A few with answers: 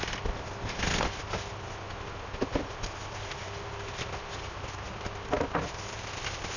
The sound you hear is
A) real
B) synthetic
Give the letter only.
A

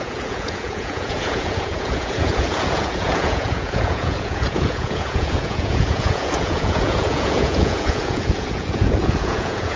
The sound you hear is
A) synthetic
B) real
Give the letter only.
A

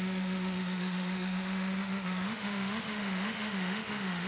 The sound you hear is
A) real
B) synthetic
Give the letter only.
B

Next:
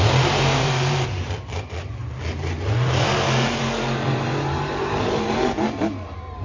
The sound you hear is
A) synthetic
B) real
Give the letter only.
A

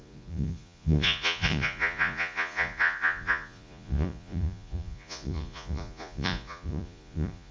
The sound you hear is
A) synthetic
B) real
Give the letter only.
A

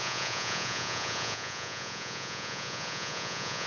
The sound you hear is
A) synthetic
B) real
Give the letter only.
A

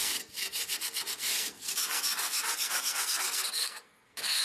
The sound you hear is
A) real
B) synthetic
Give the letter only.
B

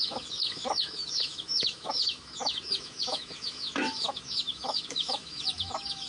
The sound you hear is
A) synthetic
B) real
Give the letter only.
A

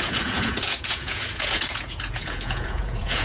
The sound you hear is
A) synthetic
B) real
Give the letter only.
A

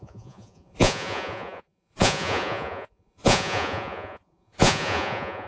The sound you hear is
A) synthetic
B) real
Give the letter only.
A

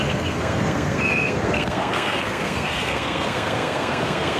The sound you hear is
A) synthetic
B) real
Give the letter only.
A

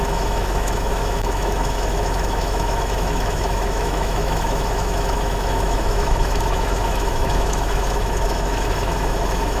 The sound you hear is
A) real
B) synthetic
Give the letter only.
B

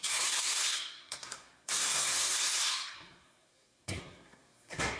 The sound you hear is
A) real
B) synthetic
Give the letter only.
B